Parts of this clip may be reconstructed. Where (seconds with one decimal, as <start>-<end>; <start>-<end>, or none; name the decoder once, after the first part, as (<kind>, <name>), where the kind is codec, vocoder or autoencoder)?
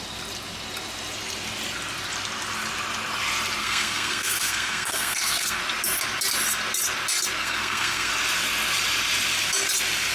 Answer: 3.6-5.6 (codec, SNAC); 7.4-8.1